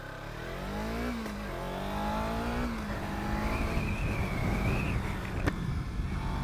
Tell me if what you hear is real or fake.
real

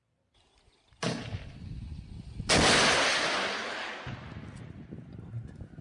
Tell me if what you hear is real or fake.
real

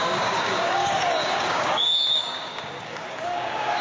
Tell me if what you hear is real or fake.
fake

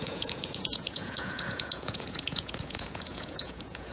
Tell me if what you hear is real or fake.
fake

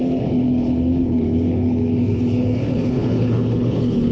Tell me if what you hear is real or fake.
fake